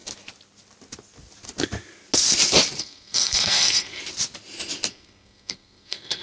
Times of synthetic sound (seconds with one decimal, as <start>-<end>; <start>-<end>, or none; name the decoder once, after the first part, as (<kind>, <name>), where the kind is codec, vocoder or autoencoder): 2.8-4.0 (codec, SNAC); 4.9-6.2